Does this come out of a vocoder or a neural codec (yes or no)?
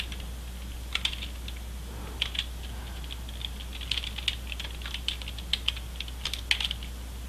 no